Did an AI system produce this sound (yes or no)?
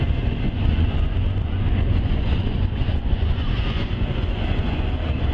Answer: yes